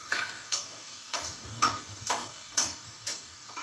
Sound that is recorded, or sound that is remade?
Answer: remade